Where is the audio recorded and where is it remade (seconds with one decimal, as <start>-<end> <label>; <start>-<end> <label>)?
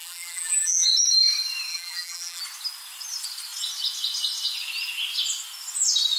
0.0-0.9 remade; 0.9-1.7 recorded; 1.7-2.4 remade; 2.4-6.2 recorded